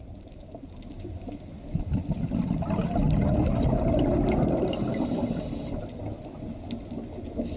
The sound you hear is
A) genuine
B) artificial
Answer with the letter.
A